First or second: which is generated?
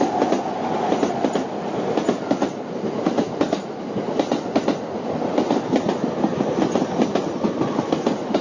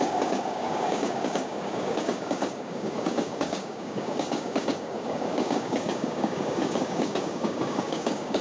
second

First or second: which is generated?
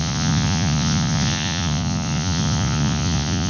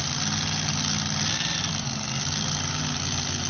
first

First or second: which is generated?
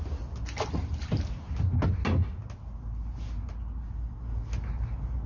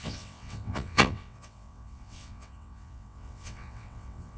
second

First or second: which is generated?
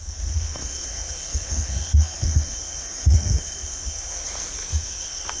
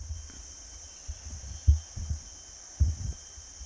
first